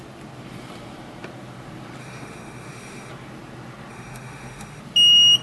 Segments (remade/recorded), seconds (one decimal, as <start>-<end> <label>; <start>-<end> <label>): 0.0-2.0 recorded; 2.0-3.1 remade; 3.1-3.9 recorded; 3.9-4.8 remade; 4.8-5.4 recorded